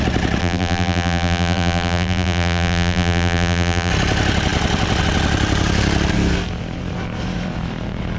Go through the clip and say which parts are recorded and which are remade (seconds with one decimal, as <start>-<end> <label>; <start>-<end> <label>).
0.0-0.4 recorded; 0.4-3.9 remade; 3.9-8.2 recorded